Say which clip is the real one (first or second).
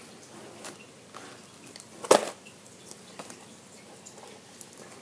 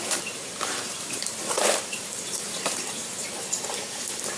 first